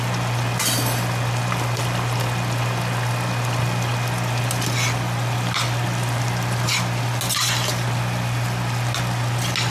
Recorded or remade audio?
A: recorded